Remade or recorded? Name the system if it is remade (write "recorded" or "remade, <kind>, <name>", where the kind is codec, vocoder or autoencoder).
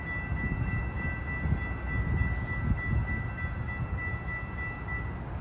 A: recorded